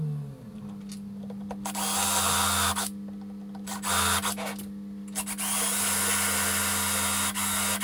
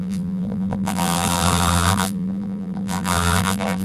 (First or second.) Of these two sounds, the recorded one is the first